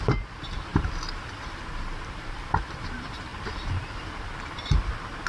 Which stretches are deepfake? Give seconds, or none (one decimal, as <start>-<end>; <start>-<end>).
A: 0.7-2.8